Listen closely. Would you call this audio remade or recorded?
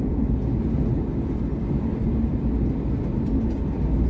recorded